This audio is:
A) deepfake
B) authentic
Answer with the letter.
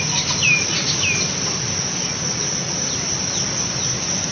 B